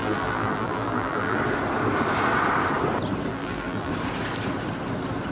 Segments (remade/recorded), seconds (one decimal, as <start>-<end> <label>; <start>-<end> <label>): 0.0-1.4 remade; 1.4-3.3 recorded; 3.3-3.9 remade; 3.9-5.3 recorded